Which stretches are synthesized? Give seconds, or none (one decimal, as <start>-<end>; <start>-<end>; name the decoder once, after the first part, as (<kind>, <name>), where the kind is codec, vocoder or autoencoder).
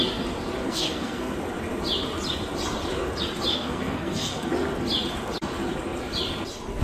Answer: 0.6-1.3 (codec, SNAC); 3.5-4.5